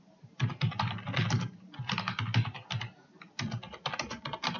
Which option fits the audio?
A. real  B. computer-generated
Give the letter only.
A